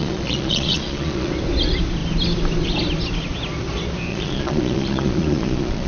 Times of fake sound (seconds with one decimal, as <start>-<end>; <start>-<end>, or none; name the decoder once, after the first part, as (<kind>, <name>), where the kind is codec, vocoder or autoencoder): 0.0-1.3 (vocoder, Vocos); 4.1-5.9